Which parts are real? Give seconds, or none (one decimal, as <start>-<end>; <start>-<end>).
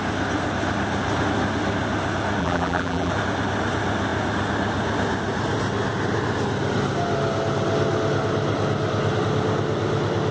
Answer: 0.0-2.4; 3.1-10.3